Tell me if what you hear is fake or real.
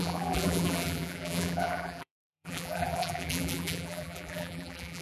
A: fake